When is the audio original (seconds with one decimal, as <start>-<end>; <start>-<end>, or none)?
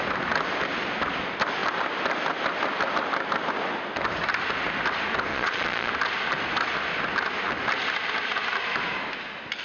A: 0.0-5.3; 5.9-9.6